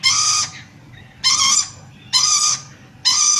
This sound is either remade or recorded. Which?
recorded